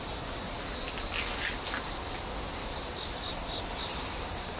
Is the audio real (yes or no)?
yes